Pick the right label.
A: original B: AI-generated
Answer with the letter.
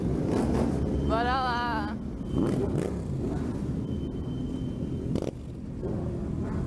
A